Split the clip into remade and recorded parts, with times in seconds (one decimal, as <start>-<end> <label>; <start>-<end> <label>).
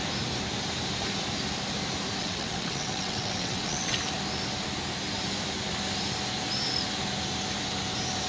0.0-2.2 recorded; 2.2-4.0 remade; 4.0-8.3 recorded